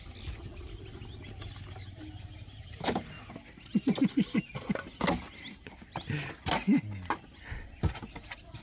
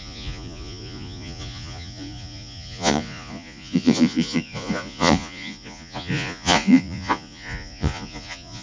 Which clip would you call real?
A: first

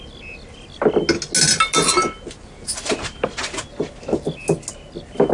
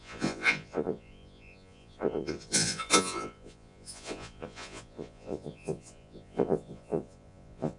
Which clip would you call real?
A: first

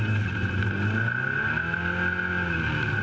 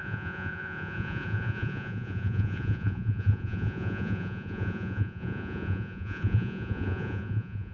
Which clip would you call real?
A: first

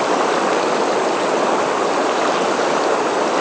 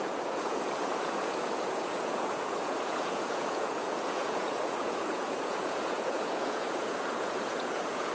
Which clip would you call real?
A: first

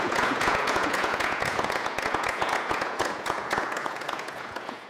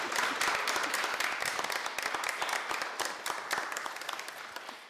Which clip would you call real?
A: second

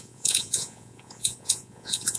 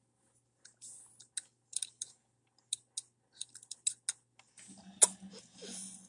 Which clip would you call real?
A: second